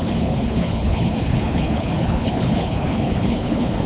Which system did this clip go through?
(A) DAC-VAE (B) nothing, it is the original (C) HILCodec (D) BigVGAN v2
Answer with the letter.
C